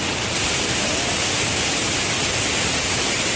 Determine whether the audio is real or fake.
real